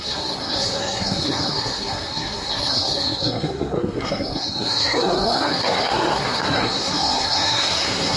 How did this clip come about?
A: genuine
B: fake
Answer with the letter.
B